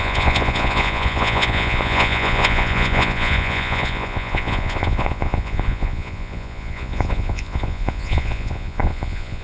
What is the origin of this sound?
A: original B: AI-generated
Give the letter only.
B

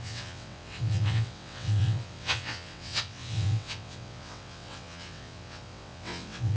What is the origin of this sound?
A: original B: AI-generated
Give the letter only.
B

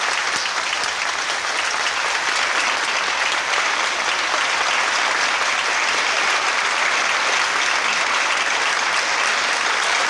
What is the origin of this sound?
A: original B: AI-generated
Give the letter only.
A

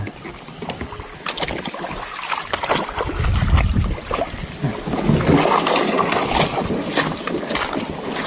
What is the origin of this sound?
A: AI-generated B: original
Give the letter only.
B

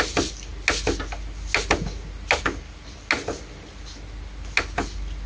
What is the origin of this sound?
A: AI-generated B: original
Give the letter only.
B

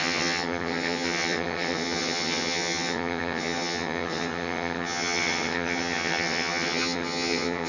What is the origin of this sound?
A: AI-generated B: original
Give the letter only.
A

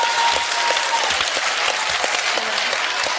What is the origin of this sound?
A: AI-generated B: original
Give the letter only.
B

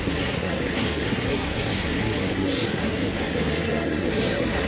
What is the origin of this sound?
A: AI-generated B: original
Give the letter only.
A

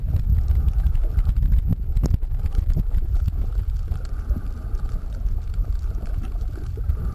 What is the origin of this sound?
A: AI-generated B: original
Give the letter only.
A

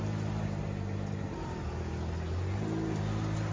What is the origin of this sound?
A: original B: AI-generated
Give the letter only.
A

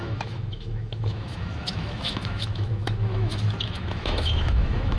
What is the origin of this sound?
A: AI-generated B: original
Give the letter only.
A